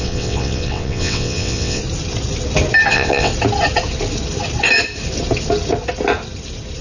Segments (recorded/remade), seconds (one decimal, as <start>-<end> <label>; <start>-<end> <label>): 0.0-1.8 remade; 1.8-2.9 recorded; 2.9-3.3 remade; 3.3-6.8 recorded